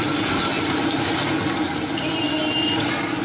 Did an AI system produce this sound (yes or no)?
no